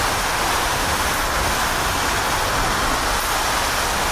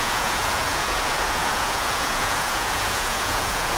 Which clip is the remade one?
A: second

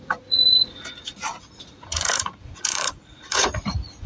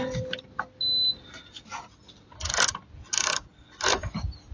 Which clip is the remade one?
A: first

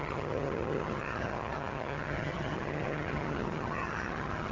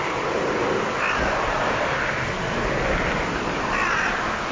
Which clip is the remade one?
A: first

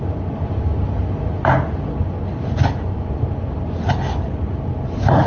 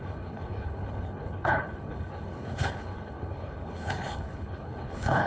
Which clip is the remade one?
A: second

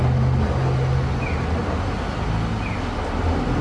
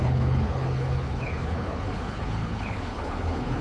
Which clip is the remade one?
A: second